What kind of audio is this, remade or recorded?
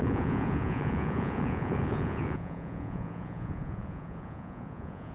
remade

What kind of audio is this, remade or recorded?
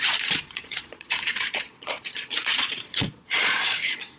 remade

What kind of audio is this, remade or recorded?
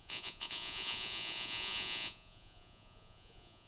remade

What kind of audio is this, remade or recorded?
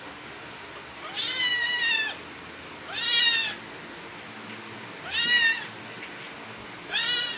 recorded